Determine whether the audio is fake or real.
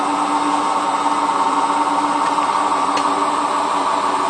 real